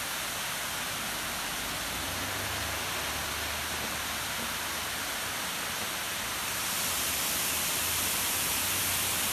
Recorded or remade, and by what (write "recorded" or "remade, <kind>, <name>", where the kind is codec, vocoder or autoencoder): recorded